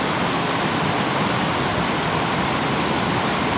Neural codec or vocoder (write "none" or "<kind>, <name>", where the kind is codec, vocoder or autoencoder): none